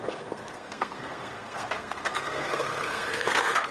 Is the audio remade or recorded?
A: remade